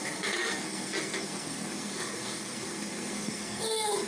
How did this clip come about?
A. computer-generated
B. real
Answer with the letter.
A